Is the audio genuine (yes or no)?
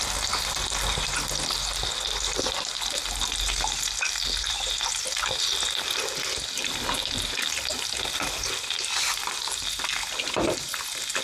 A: yes